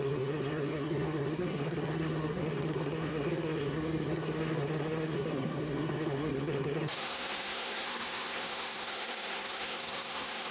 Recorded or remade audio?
remade